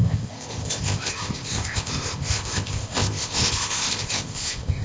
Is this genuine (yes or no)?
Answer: no